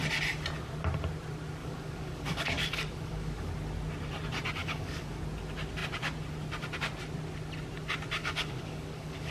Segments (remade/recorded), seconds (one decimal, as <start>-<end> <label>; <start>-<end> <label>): 0.0-1.6 recorded; 1.6-3.5 remade; 3.5-4.6 recorded; 4.6-5.2 remade; 5.2-8.2 recorded; 8.2-9.3 remade

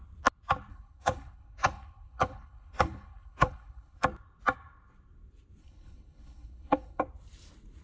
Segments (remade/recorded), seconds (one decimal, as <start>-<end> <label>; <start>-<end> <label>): 0.0-0.7 recorded; 0.7-4.0 remade; 4.0-5.6 recorded; 5.6-7.0 remade; 7.0-7.8 recorded